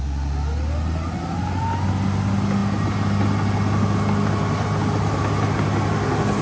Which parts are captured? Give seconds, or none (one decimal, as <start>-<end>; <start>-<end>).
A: 0.0-6.4